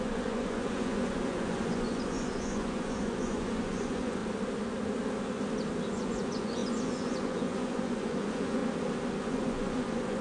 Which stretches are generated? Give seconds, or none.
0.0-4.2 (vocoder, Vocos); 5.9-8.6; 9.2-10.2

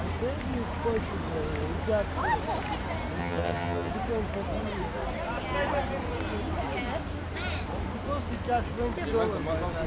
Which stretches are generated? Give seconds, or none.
3.2-3.9 (vocoder, HiFi-GAN)

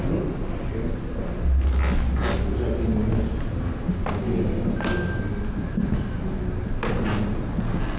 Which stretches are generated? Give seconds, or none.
none

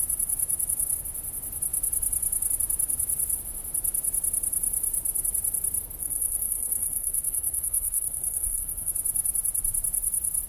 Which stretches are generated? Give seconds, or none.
6.0-8.9 (codec, SNAC)

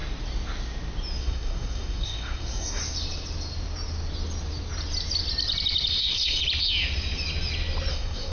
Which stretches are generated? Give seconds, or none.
1.2-2.8 (codec, SNAC); 5.9-6.4; 7.9-8.3

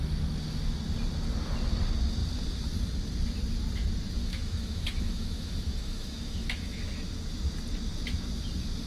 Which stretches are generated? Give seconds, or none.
4.2-6.9 (autoencoder, DAC-VAE)

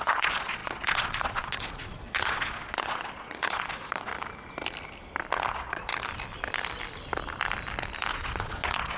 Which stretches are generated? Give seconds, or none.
0.0-4.1 (vocoder, Vocos); 5.5-5.9; 8.1-9.0

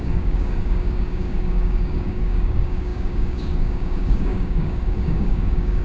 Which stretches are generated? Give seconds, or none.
0.0-5.8 (codec, DAC)